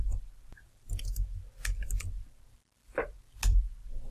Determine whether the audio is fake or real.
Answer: real